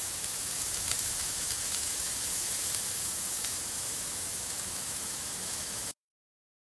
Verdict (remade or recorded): remade